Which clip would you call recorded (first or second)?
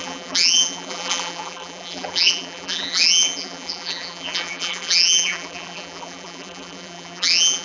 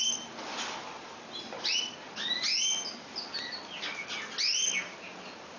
second